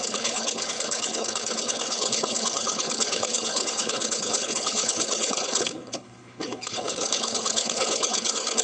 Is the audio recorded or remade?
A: remade